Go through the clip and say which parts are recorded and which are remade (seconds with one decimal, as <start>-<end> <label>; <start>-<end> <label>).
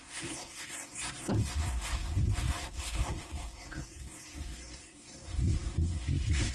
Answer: 0.0-6.5 remade